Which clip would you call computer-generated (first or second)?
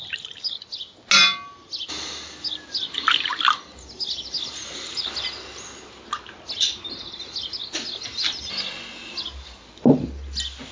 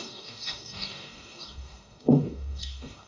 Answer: second